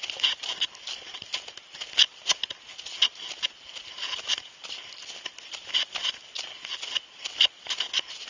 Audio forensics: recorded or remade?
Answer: recorded